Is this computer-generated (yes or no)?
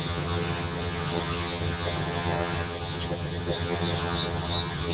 yes